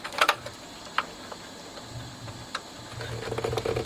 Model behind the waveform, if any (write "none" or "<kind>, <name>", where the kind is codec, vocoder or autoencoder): none